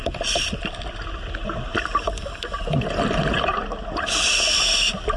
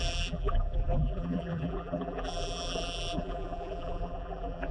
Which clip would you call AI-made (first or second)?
second